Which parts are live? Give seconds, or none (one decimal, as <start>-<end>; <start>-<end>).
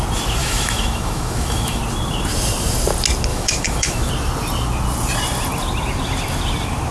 0.0-0.4; 1.8-3.3; 4.1-6.9